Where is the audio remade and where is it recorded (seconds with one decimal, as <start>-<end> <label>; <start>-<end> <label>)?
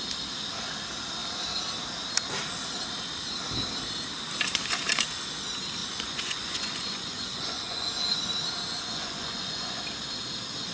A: 0.0-5.8 recorded; 5.8-7.9 remade; 7.9-8.7 recorded; 8.7-9.8 remade; 9.8-10.7 recorded